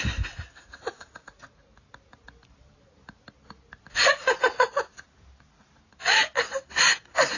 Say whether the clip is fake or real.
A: real